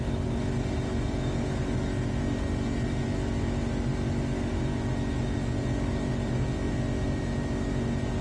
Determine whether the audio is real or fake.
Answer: real